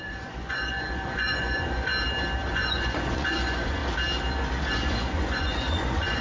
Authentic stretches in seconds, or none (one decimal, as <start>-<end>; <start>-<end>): 1.9-2.5; 3.8-4.7